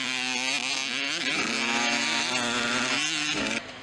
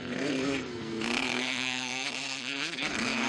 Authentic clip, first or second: first